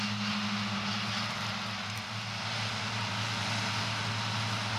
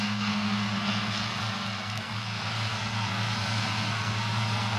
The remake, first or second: second